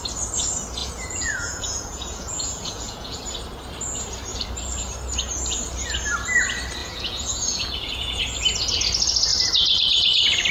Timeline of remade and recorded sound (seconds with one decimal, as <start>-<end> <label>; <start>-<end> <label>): 0.0-0.8 recorded; 0.8-3.2 remade; 3.2-6.8 recorded; 6.8-8.2 remade; 8.2-10.5 recorded